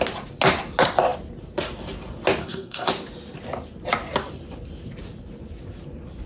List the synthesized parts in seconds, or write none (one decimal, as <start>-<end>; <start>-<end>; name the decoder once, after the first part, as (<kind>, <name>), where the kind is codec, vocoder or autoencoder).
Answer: 2.4-2.9 (codec, SNAC)